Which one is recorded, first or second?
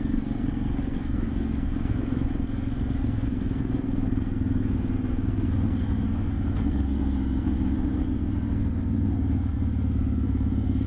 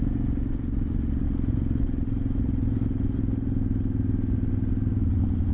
second